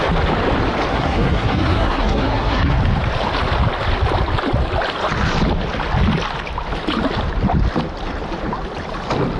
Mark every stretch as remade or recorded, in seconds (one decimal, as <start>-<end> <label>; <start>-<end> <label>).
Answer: 0.0-0.9 recorded; 0.9-2.8 remade; 2.8-9.4 recorded